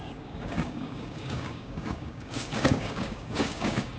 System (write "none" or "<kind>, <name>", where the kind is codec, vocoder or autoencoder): codec, DAC